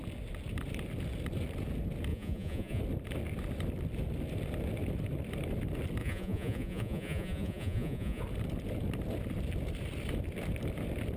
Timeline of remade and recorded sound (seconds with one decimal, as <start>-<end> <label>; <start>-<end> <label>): 0.0-2.1 recorded; 2.1-2.8 remade; 2.8-6.0 recorded; 6.0-8.2 remade; 8.2-11.2 recorded